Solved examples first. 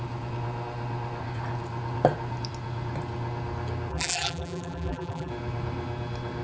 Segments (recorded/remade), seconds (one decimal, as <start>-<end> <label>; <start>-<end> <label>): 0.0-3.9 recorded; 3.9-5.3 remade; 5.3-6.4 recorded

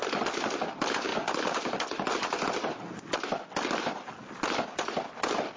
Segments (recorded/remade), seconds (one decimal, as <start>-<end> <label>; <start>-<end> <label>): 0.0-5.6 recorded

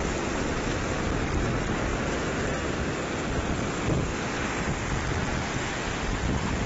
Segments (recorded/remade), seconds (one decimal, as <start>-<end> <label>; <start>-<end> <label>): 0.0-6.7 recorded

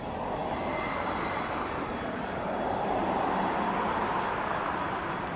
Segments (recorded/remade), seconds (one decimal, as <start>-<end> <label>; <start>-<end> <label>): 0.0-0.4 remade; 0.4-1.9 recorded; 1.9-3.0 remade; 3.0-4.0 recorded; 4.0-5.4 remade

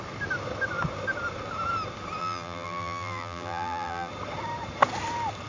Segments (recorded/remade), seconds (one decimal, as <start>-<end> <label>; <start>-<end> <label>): 0.0-2.2 recorded; 2.2-4.1 remade; 4.1-5.5 recorded

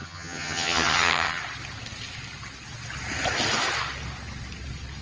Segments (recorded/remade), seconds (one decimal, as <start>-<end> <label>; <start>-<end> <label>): 0.0-1.4 remade; 1.4-5.0 recorded

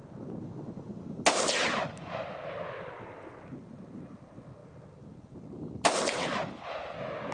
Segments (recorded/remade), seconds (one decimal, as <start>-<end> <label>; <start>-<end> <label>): 0.0-7.3 recorded

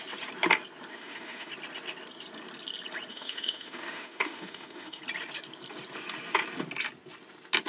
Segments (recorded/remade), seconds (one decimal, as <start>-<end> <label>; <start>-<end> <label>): 0.0-0.9 recorded; 0.9-1.5 remade; 1.5-3.1 recorded; 3.1-5.0 remade; 5.0-7.7 recorded